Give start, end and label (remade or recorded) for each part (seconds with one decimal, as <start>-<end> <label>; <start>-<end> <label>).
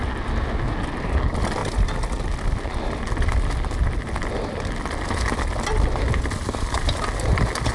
0.0-7.7 recorded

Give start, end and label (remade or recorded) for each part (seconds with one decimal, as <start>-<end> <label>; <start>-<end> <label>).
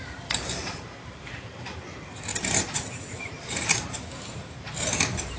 0.0-5.4 remade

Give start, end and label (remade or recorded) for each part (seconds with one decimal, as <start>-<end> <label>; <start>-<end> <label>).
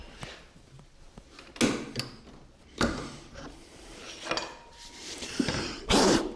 0.0-2.6 recorded; 2.6-4.0 remade; 4.0-4.7 recorded; 4.7-6.4 remade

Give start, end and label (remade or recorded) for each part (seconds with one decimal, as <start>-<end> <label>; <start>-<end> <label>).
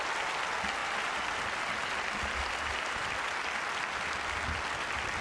0.0-0.8 recorded; 0.8-1.4 remade; 1.4-1.8 recorded; 1.8-3.0 remade; 3.0-5.2 recorded